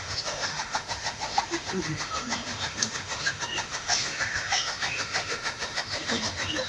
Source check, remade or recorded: remade